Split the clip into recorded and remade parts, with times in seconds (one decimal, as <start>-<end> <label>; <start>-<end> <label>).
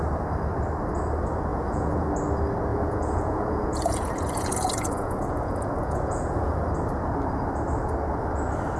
0.0-1.5 recorded; 1.5-2.1 remade; 2.1-2.7 recorded; 2.7-6.7 remade; 6.7-8.8 recorded